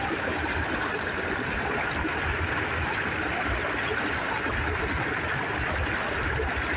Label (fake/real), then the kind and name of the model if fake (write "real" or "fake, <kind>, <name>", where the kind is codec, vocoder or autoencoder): real